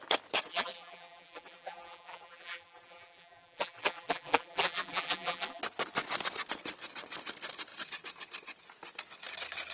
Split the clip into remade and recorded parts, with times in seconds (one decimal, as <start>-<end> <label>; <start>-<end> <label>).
0.0-0.5 recorded; 0.5-5.6 remade; 5.6-9.7 recorded